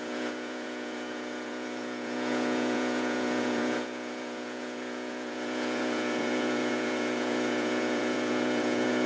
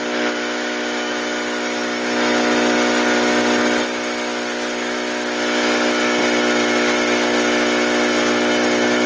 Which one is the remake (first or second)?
first